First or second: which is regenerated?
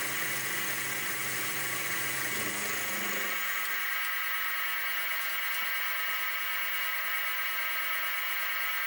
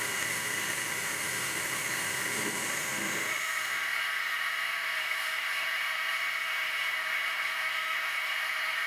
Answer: second